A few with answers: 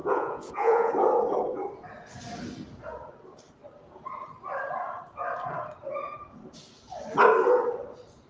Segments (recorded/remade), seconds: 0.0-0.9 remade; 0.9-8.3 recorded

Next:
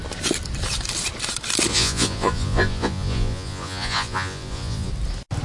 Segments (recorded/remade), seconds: 0.0-1.7 recorded; 1.7-4.9 remade; 4.9-5.4 recorded

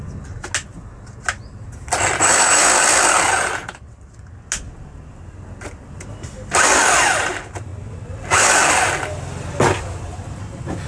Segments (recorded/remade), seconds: 0.0-10.9 recorded

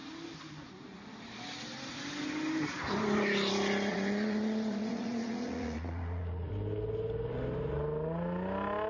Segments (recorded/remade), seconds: 0.0-3.9 recorded; 3.9-6.5 remade; 6.5-8.9 recorded

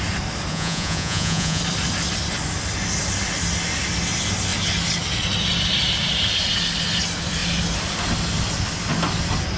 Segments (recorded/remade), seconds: 0.0-0.5 recorded; 0.5-1.6 remade; 1.6-9.6 recorded